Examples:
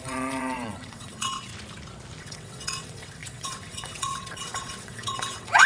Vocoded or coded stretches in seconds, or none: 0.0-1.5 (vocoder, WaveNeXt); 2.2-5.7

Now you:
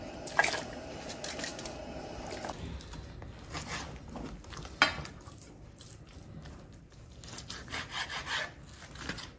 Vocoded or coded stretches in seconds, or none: none

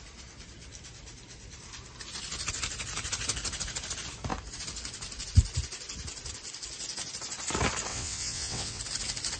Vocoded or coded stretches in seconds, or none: 7.9-8.8 (vocoder, WaveNeXt)

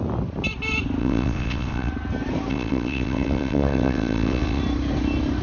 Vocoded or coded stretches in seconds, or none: 1.0-1.9 (vocoder, WaveNeXt); 2.5-4.6

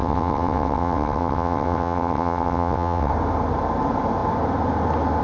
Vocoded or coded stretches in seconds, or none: 0.0-3.1 (vocoder, WaveNeXt)